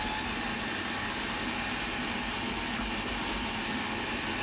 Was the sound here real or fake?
real